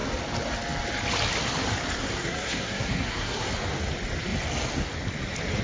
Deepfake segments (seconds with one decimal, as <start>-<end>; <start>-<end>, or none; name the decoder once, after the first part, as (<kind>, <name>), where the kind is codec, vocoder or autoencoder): 2.0-3.5 (codec, SNAC)